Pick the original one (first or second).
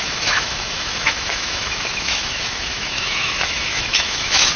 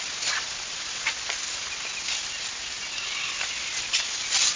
second